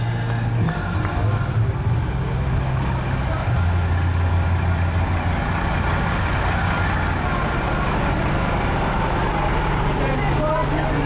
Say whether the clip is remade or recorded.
recorded